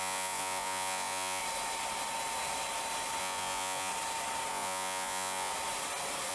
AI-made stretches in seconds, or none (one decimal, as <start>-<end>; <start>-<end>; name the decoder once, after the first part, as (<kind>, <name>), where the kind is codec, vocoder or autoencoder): 0.0-1.4 (vocoder, Vocos); 3.2-3.9; 4.5-5.5